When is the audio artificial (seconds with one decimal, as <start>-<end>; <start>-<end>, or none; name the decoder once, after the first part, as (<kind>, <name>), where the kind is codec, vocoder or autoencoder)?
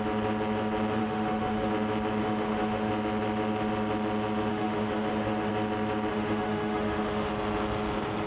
1.0-1.7 (autoencoder, DAC-VAE); 2.2-2.9; 4.5-5.5; 6.1-7.3